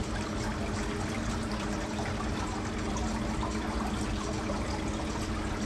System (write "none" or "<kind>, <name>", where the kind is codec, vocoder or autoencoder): none